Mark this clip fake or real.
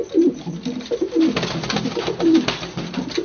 real